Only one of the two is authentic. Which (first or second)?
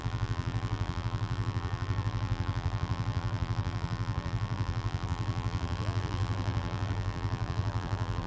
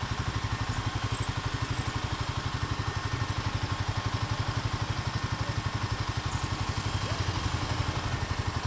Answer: second